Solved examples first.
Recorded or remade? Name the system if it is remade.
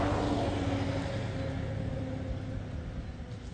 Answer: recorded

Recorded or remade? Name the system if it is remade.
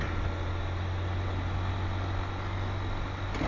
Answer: recorded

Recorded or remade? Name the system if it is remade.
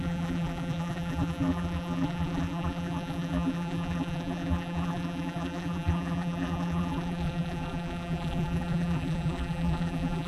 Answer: remade, vocoder, BigVGAN v2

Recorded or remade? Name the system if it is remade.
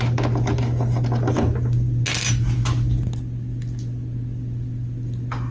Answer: recorded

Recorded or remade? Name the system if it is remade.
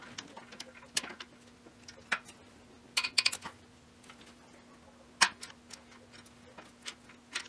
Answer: recorded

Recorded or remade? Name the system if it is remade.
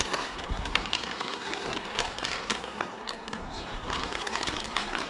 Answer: remade, codec, SNAC